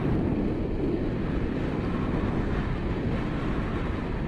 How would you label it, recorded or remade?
recorded